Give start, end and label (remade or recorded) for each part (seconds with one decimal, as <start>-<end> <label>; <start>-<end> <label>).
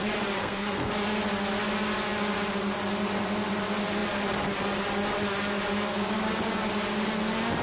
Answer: 0.0-0.4 recorded; 0.4-0.9 remade; 0.9-7.6 recorded